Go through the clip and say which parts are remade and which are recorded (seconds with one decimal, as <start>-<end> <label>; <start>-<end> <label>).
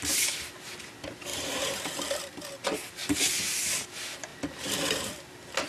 0.0-1.3 recorded; 1.3-1.9 remade; 1.9-3.0 recorded; 3.0-3.7 remade; 3.7-5.7 recorded